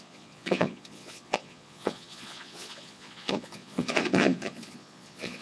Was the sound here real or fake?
fake